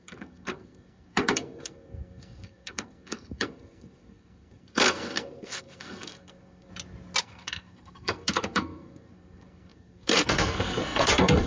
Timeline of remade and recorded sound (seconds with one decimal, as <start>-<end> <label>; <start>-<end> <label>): 0.0-6.7 remade; 6.7-7.2 recorded; 7.2-11.5 remade